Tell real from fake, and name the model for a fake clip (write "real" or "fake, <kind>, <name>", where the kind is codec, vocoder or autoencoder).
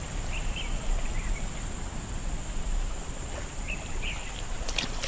real